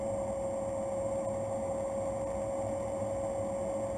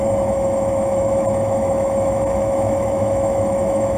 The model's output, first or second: second